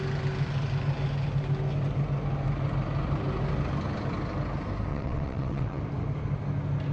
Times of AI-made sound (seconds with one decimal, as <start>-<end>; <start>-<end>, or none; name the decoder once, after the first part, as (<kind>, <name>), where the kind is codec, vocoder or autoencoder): 4.9-5.8 (vocoder, WaveNeXt)